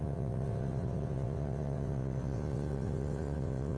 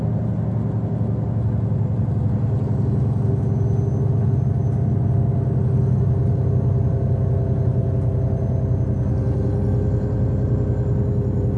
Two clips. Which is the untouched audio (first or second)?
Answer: second